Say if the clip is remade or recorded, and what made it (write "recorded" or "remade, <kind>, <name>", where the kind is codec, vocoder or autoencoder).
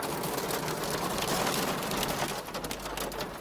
recorded